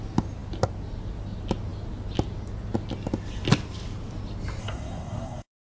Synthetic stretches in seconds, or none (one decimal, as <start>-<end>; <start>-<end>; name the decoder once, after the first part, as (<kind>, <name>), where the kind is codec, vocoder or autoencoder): 4.6-5.6 (codec, SNAC)